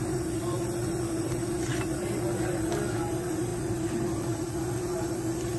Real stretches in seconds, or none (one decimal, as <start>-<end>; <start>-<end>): 0.0-5.6